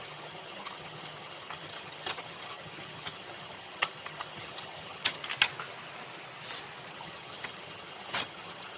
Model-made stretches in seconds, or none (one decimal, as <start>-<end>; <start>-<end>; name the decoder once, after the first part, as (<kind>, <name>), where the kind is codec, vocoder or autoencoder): 0.0-5.2 (vocoder, HiFi-GAN); 6.9-8.8